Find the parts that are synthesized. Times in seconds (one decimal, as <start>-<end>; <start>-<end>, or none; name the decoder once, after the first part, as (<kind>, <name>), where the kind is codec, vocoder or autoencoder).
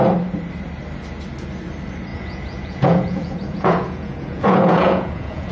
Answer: 2.1-5.5 (vocoder, Vocos)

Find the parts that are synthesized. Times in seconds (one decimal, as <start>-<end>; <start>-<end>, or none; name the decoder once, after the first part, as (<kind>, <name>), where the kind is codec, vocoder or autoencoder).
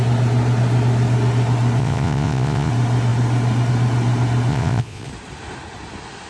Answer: 1.8-2.7 (vocoder, Vocos); 4.5-5.1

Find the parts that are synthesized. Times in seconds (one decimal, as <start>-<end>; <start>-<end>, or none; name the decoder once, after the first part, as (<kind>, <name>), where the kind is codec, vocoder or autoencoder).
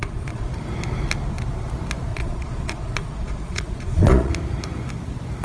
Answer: 0.0-0.5 (vocoder, Vocos); 2.1-4.3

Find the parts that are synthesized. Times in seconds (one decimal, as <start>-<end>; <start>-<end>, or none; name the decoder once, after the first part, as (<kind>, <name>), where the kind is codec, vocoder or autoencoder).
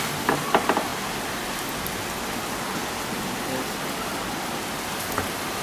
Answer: none